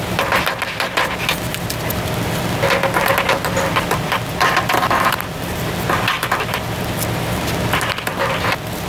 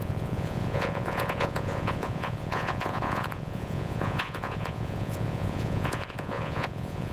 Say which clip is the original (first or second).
first